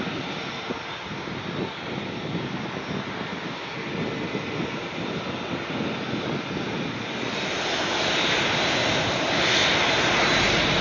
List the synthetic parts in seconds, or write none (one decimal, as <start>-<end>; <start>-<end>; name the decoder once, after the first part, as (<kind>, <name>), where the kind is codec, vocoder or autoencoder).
none